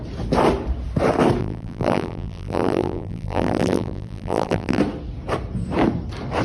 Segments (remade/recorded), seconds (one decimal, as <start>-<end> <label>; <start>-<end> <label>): 0.0-1.4 recorded; 1.4-4.8 remade; 4.8-6.4 recorded